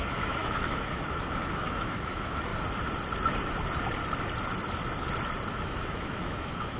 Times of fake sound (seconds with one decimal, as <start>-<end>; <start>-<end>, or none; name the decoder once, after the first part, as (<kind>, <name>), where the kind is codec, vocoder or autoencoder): 0.0-2.5 (autoencoder, DAC-VAE); 5.5-6.8